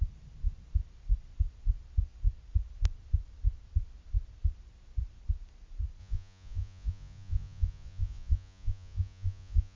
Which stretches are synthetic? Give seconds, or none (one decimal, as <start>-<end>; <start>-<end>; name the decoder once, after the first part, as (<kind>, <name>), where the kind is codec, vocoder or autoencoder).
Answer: 6.0-9.8 (vocoder, Vocos)